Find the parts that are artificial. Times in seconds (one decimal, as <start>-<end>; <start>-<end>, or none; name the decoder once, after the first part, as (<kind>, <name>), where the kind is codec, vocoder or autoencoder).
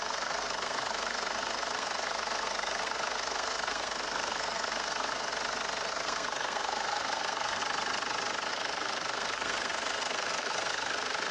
0.0-5.3 (codec, SNAC); 5.9-7.6; 8.5-11.3